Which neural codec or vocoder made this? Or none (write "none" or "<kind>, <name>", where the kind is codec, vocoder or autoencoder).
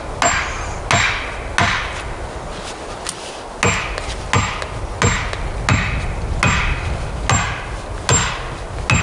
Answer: none